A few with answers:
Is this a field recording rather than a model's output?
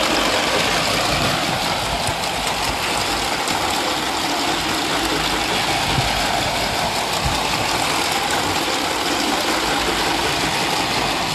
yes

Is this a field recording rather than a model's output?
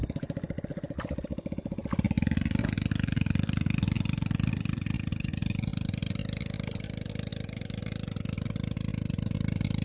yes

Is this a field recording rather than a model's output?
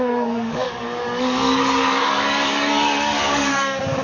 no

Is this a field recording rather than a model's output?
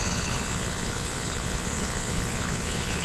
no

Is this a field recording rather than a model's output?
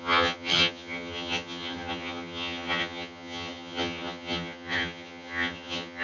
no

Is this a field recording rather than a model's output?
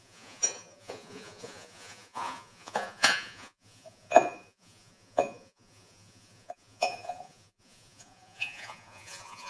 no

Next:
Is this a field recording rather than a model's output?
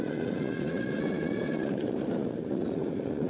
no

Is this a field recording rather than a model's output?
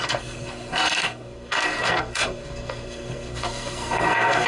no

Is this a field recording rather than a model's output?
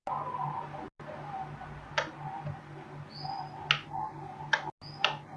yes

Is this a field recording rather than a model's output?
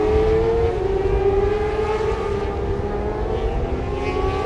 yes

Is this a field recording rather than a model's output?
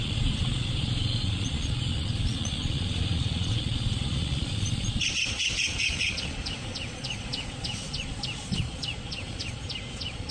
no